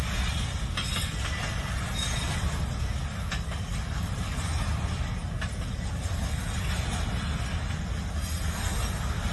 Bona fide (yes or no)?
yes